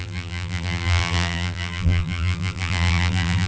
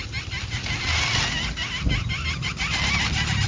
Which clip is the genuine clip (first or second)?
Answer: second